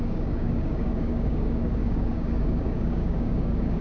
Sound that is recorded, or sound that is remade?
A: remade